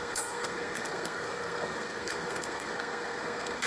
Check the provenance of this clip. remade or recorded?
remade